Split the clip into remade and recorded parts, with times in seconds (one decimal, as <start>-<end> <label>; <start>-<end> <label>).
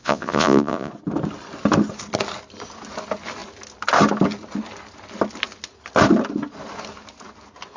0.0-0.9 remade; 0.9-7.8 recorded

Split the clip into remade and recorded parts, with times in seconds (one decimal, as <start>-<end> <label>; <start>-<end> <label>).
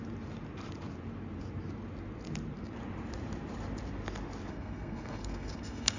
0.0-4.5 recorded; 4.5-6.0 remade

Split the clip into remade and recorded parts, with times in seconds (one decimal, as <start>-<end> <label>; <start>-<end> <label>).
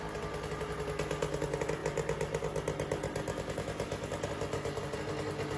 0.0-5.6 recorded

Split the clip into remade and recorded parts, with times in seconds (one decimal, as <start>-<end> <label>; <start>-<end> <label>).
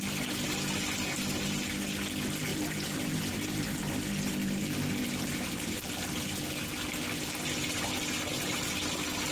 0.0-2.5 recorded; 2.5-3.9 remade; 3.9-4.4 recorded; 4.4-5.9 remade; 5.9-9.3 recorded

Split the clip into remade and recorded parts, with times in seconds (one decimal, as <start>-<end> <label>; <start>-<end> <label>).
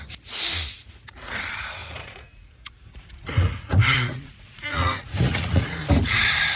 0.0-0.8 recorded; 0.8-1.4 remade; 1.4-1.8 recorded; 1.8-5.8 remade; 5.8-6.6 recorded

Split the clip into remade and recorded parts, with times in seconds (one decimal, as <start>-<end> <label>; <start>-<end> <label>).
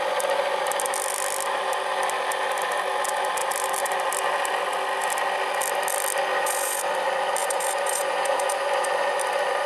0.0-6.3 recorded; 6.3-6.9 remade; 6.9-7.4 recorded; 7.4-9.2 remade; 9.2-9.7 recorded